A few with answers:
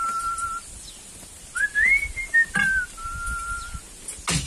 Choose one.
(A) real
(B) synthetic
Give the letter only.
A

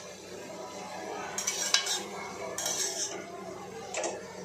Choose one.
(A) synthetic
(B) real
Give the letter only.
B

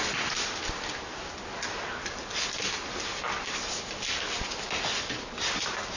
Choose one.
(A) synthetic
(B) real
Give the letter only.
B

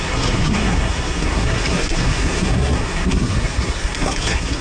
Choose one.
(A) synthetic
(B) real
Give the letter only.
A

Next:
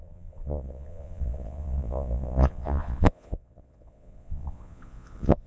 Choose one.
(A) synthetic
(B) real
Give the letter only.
A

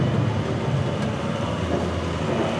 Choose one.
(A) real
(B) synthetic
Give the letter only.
A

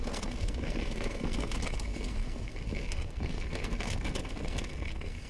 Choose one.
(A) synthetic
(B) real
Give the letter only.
A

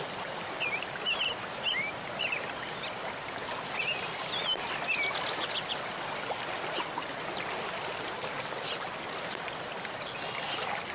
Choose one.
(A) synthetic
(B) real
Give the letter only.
B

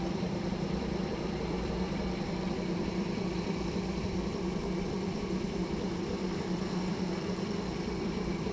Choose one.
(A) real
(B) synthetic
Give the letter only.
B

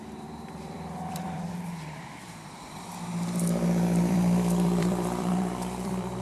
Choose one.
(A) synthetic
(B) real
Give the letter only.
A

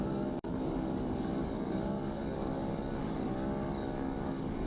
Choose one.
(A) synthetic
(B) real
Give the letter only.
A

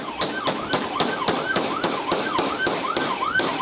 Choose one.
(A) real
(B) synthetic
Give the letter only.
A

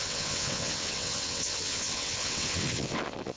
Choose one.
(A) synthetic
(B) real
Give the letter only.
A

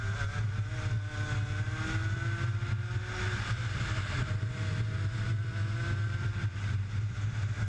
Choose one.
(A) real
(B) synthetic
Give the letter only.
A